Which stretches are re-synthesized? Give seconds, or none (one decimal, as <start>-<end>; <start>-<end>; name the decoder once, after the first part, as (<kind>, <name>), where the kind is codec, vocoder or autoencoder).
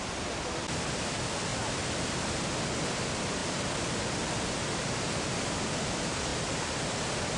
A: 1.5-2.4 (vocoder, BigVGAN v2)